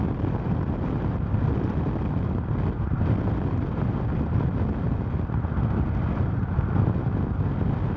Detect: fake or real real